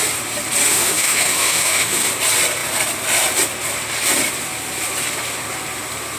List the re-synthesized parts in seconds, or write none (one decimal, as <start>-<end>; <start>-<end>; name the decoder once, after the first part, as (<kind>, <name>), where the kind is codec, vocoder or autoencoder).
0.7-2.1 (autoencoder, DAC-VAE)